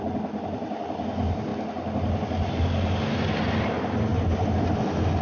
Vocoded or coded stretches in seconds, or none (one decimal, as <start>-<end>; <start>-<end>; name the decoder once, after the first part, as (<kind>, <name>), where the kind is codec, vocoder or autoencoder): 4.1-4.7 (vocoder, BigVGAN v2)